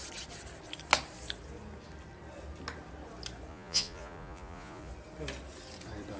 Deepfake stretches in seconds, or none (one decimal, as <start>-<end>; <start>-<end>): 3.5-4.9